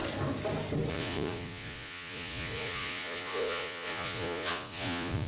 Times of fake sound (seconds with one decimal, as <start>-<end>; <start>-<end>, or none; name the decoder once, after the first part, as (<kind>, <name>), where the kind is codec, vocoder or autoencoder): 0.9-5.3 (vocoder, Vocos)